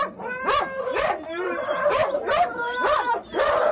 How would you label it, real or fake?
fake